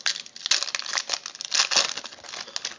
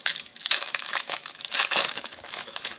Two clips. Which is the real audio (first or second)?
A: first